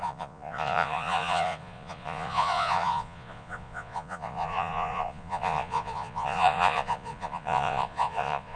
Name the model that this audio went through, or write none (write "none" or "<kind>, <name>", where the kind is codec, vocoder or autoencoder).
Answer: vocoder, Vocos